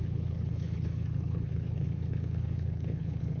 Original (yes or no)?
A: no